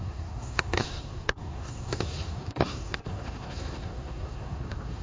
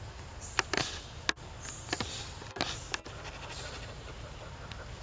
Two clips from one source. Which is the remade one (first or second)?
first